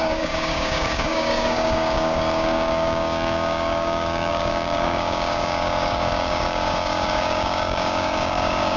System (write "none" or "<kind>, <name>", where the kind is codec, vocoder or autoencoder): codec, DAC